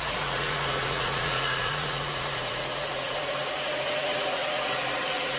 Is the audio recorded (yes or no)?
no